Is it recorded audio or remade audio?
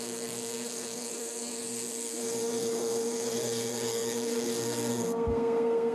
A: remade